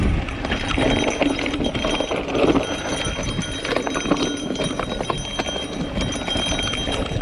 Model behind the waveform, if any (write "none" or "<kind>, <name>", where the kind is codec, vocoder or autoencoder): none